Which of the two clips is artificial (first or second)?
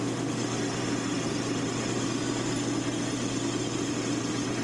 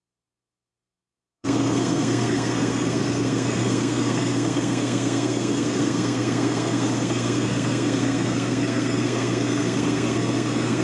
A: second